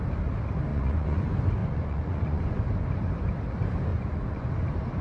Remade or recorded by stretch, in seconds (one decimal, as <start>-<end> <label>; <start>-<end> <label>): 0.0-0.7 recorded; 0.7-1.2 remade; 1.2-1.6 recorded; 1.6-2.6 remade; 2.6-3.9 recorded; 3.9-4.5 remade; 4.5-5.0 recorded